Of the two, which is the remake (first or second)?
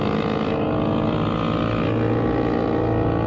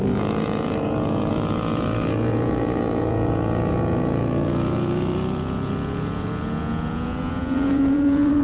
second